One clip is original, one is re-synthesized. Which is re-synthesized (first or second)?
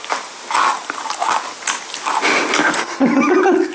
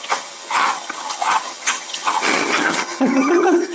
second